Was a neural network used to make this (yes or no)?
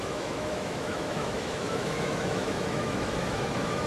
yes